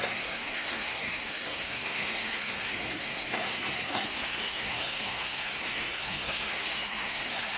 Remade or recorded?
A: remade